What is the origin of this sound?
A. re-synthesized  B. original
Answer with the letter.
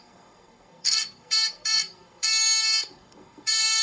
A